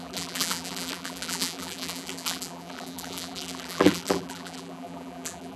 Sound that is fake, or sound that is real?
fake